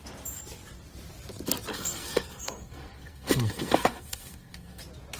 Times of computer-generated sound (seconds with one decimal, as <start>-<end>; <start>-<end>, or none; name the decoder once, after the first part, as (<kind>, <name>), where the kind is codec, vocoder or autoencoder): 1.7-4.8 (codec, SNAC)